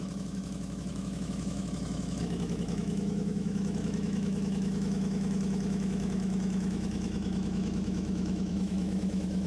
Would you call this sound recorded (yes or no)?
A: no